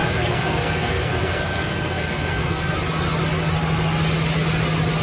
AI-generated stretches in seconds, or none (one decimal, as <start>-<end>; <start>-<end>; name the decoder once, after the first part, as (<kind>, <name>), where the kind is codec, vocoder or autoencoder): 0.0-2.7 (codec, SNAC)